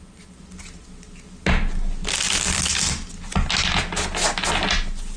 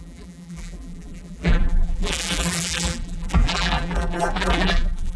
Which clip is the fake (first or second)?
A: second